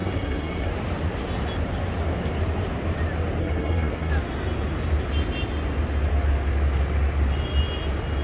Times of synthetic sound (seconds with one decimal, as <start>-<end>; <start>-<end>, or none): 0.0-0.7; 3.4-4.1